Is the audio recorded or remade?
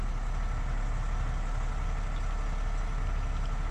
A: recorded